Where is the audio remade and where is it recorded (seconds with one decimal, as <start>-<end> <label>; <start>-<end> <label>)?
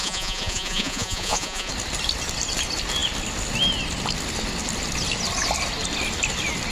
0.0-1.7 remade; 1.7-6.7 recorded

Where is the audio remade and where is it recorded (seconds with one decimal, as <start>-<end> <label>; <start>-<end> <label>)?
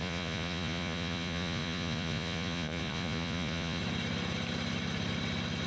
0.0-3.8 remade; 3.8-5.7 recorded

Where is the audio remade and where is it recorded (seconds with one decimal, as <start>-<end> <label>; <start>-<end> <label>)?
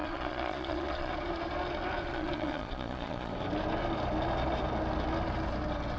0.0-1.1 remade; 1.1-2.1 recorded; 2.1-3.3 remade; 3.3-6.0 recorded